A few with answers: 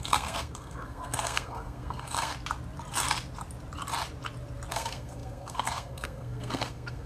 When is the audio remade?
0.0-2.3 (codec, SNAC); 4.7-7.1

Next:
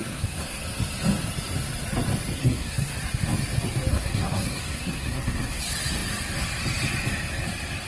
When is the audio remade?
0.0-0.6 (codec, SNAC); 2.4-3.0; 3.9-5.6

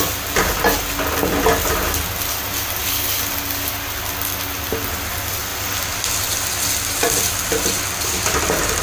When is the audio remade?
none

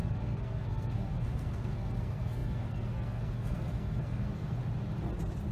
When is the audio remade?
0.0-4.6 (codec, SNAC)

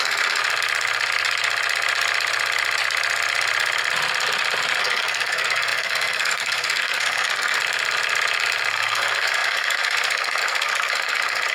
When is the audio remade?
0.0-0.4 (codec, SNAC); 4.8-7.6; 8.7-11.5

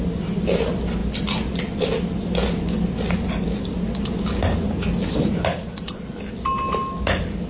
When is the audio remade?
none

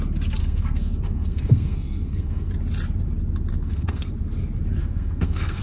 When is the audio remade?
0.4-2.5 (codec, SNAC); 3.5-4.1; 4.8-5.6